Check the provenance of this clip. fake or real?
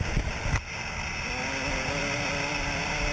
real